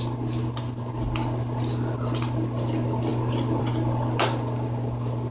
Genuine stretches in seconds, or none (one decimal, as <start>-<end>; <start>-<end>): 0.0-5.3